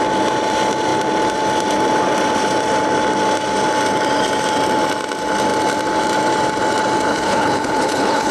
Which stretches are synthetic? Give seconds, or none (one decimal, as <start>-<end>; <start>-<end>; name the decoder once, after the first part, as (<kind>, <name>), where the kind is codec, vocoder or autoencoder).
7.1-8.3 (codec, HILCodec)